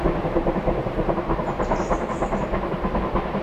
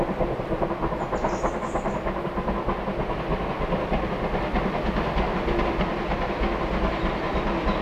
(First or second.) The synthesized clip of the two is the first